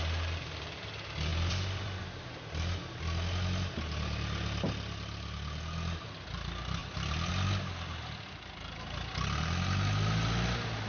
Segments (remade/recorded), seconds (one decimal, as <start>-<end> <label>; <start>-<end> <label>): 0.0-1.3 recorded; 1.3-2.0 remade; 2.0-6.8 recorded; 6.8-7.3 remade; 7.3-10.9 recorded